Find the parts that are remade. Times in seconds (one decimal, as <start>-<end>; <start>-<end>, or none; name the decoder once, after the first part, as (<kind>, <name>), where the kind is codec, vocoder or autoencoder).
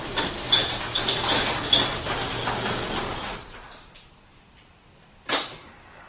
none